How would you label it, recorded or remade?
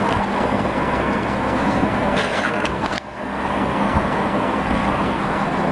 remade